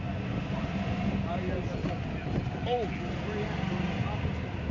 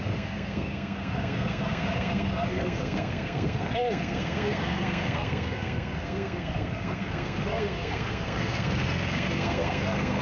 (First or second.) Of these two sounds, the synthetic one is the second